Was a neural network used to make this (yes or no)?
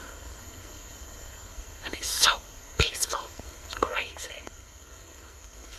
yes